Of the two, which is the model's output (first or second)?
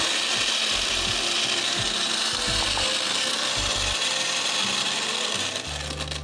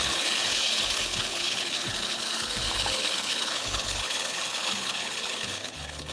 second